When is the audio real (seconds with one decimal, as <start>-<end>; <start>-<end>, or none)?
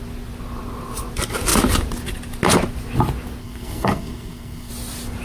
0.0-3.4; 4.7-5.2